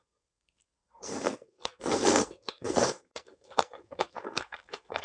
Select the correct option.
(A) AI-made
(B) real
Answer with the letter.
A